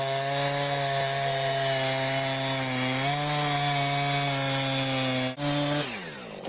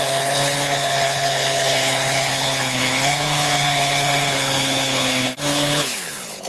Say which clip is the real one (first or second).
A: first